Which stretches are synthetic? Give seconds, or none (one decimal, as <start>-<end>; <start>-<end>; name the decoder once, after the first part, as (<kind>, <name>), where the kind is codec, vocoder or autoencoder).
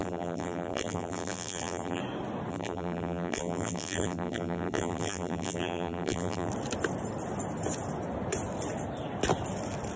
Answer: 0.0-2.0 (vocoder, BigVGAN v2); 2.5-6.5